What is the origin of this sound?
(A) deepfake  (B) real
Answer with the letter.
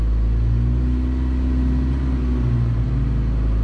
B